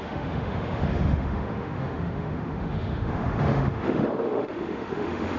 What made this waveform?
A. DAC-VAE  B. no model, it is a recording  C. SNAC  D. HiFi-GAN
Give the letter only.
A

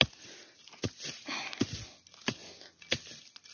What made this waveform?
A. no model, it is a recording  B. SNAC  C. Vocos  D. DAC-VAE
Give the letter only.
A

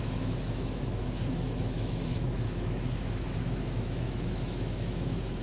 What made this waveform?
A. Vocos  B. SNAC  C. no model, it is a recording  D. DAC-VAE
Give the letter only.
D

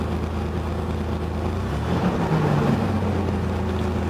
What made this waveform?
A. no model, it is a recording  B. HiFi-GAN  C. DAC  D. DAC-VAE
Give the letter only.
A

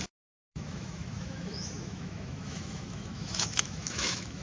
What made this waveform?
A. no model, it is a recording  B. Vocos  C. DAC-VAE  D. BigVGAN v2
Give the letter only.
C